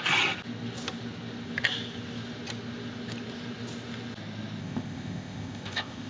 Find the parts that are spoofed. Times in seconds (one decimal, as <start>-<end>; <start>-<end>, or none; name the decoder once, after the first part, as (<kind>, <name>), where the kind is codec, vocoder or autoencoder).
4.6-6.1 (codec, ZipCodec)